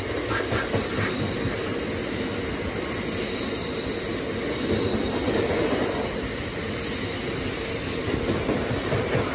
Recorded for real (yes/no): yes